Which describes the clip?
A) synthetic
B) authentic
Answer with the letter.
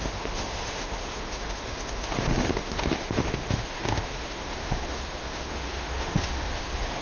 A